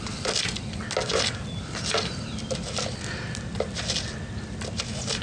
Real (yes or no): yes